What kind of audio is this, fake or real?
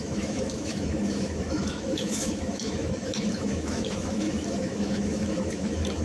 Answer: fake